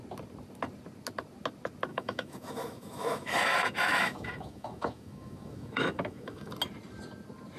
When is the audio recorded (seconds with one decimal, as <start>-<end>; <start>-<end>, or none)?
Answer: 0.0-1.9; 6.5-7.6